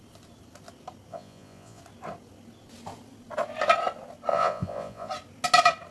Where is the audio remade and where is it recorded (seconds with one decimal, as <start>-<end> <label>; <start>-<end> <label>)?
0.0-1.1 recorded; 1.1-1.8 remade; 1.8-4.3 recorded; 4.3-5.1 remade; 5.1-5.9 recorded